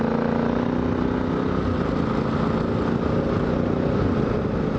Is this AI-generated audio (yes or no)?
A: no